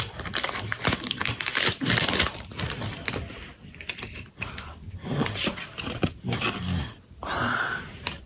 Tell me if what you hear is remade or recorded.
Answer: remade